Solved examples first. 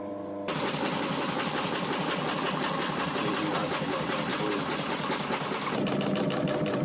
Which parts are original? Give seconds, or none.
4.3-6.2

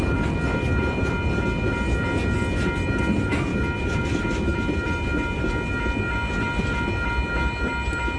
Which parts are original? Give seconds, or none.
0.0-8.2

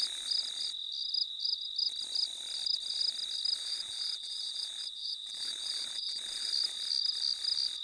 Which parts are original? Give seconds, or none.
0.0-3.6; 6.5-7.8

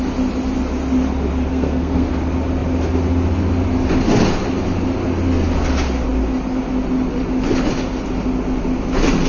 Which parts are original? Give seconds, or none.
0.0-1.5; 2.1-9.3